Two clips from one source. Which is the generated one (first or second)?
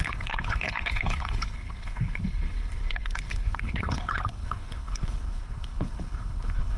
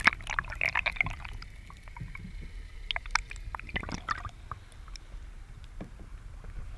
first